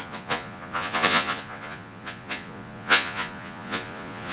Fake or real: fake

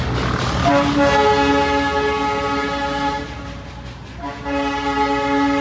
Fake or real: real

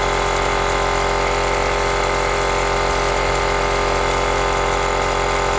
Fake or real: real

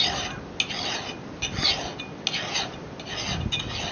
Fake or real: real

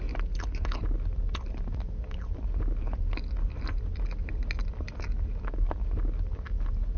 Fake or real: real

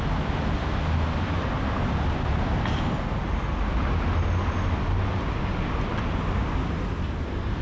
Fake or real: real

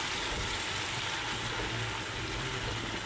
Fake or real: real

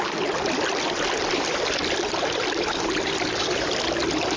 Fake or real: real